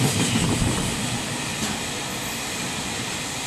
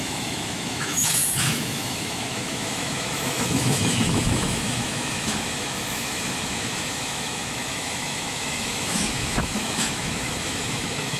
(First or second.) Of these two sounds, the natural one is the first